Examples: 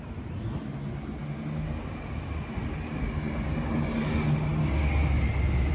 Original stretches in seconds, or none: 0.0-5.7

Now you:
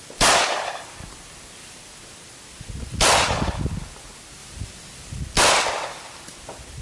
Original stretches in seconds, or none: 0.0-4.4; 5.2-6.8

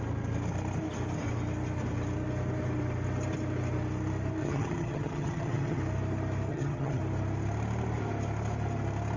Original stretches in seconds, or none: 0.0-4.4; 5.8-6.5; 7.0-9.2

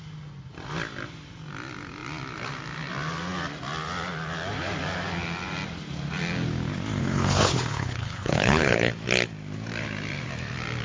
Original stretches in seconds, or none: 0.0-7.0; 8.9-10.8

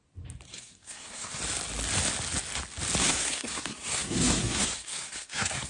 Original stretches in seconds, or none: 0.0-0.5; 1.4-3.0

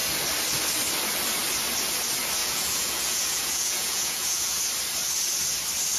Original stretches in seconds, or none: 0.0-2.4; 4.6-6.0

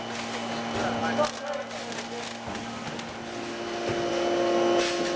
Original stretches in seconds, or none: 0.0-5.2